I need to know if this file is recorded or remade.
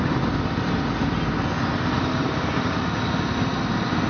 recorded